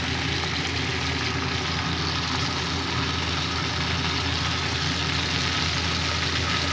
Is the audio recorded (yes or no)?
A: yes